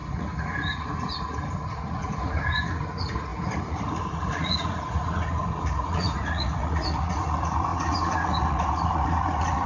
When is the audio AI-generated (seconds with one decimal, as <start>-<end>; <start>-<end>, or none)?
0.0-9.7